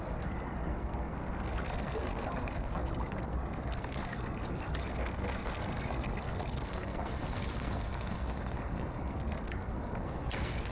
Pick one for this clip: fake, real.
fake